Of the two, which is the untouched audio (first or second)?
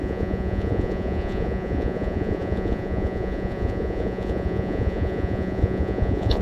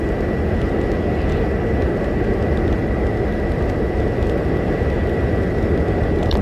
second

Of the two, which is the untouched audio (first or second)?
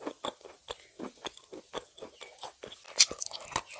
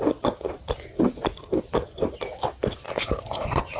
first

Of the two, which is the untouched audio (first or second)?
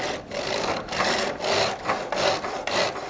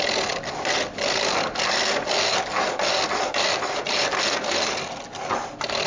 second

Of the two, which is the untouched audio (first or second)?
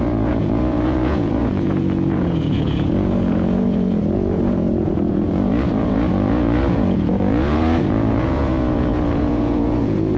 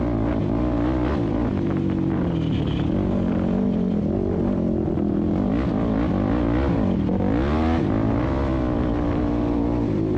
second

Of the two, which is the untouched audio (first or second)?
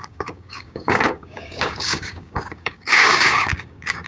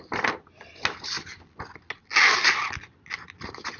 second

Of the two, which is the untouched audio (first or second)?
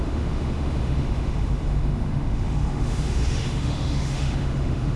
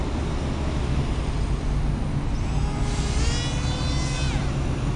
second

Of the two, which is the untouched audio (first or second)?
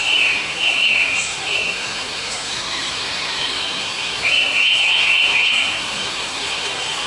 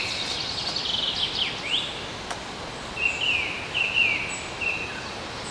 second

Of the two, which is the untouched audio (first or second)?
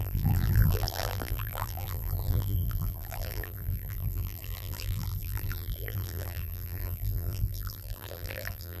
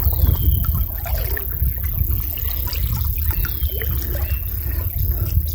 second